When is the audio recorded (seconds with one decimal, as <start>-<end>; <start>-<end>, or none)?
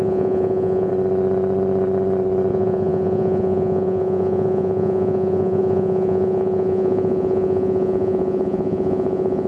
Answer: 0.9-2.5